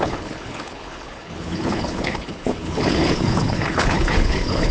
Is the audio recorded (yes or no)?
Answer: no